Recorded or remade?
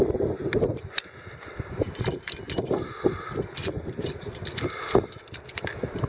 recorded